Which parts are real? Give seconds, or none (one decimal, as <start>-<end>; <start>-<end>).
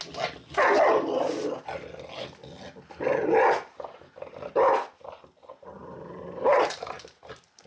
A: 0.0-5.8